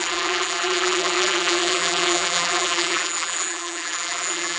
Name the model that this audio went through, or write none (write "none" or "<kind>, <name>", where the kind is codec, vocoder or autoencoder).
vocoder, BigVGAN v2